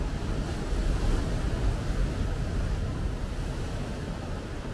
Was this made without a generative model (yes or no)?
yes